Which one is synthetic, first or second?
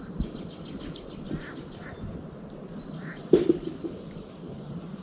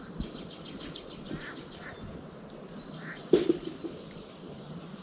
first